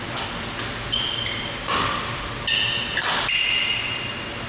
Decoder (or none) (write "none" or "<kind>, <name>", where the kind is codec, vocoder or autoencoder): none